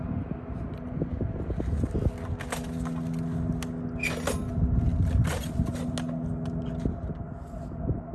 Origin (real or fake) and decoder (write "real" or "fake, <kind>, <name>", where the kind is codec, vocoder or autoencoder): real